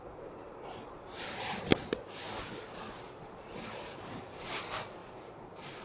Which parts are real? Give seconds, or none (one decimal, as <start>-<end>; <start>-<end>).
none